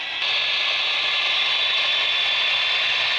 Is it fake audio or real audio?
real